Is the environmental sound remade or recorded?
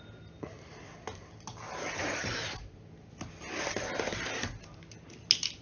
recorded